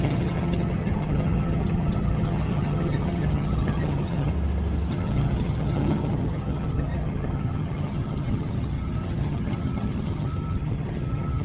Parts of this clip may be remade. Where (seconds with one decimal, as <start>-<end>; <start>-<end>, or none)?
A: 0.0-4.3; 4.9-11.4